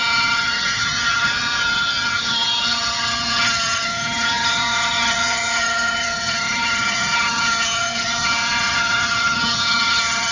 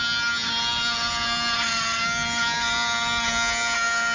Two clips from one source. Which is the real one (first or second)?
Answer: second